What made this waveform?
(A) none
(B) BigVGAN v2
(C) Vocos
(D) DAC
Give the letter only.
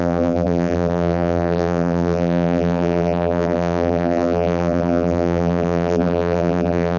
B